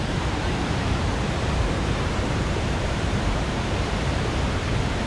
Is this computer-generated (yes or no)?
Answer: yes